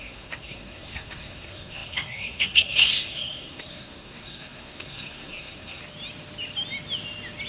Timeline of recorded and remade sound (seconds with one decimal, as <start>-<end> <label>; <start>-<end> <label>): 0.0-5.8 remade; 5.8-7.5 recorded